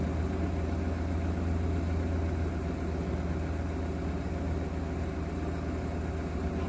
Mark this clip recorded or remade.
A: recorded